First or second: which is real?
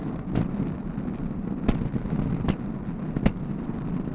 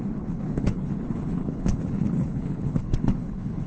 first